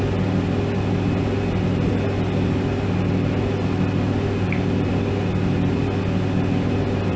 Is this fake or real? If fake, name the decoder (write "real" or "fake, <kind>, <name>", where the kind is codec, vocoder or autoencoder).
real